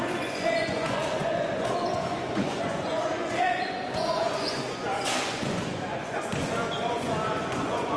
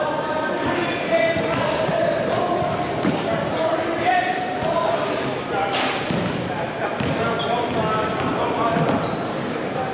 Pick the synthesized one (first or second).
first